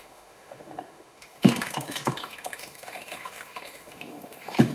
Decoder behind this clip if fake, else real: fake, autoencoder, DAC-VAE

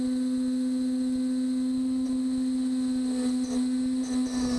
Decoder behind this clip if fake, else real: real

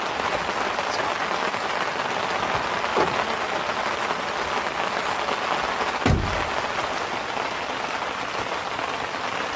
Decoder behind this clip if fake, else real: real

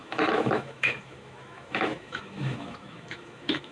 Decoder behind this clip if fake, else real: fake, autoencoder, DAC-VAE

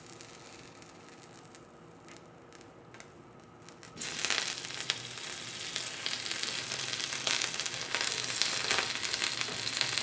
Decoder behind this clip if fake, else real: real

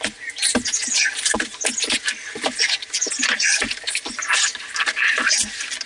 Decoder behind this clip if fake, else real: real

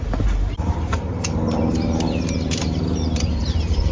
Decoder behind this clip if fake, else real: fake, vocoder, BigVGAN v2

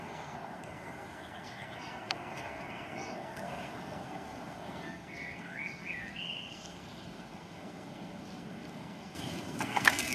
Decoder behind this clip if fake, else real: fake, codec, SNAC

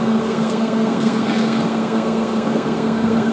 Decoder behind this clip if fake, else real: fake, codec, SNAC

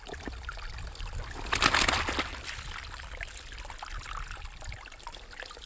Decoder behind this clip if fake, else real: real